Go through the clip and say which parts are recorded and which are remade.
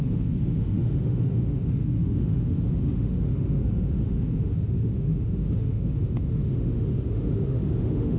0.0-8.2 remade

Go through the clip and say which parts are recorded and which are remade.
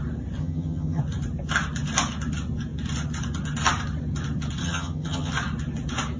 0.0-0.4 recorded; 0.4-1.0 remade; 1.0-4.6 recorded; 4.6-5.3 remade; 5.3-6.2 recorded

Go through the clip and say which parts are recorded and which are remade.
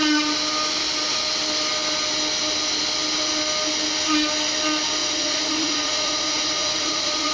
0.0-5.0 recorded; 5.0-7.3 remade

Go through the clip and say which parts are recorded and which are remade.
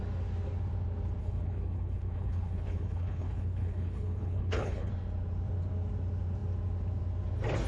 0.0-1.2 recorded; 1.2-4.9 remade; 4.9-7.7 recorded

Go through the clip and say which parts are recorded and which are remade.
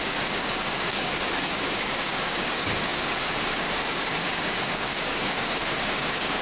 0.0-6.4 remade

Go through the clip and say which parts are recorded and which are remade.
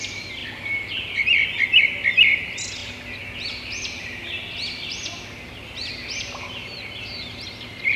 0.0-0.4 remade; 0.4-1.8 recorded; 1.8-2.8 remade; 2.8-6.2 recorded; 6.2-8.0 remade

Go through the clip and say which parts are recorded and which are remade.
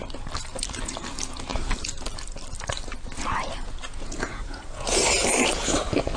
0.0-3.9 recorded; 3.9-5.0 remade; 5.0-6.2 recorded